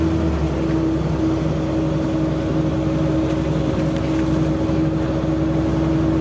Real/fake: real